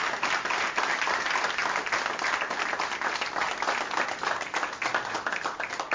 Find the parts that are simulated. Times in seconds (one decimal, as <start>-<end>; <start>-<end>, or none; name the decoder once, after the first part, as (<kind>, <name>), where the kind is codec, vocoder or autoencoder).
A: none

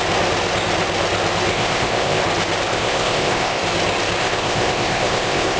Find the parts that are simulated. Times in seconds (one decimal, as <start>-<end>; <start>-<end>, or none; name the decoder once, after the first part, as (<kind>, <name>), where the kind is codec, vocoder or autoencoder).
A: 1.5-2.2 (codec, ZipCodec); 2.7-3.6; 4.2-5.6